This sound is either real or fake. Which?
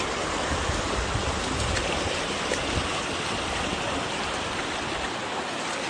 real